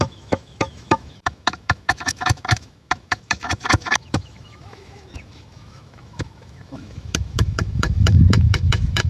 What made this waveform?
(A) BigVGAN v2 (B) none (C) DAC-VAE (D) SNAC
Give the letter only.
C